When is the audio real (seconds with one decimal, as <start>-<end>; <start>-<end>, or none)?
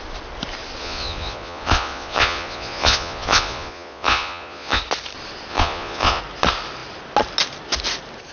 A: 0.0-0.8; 4.8-5.5; 6.2-8.3